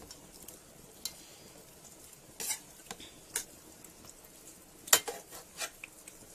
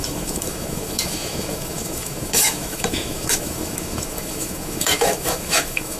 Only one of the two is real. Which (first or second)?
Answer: first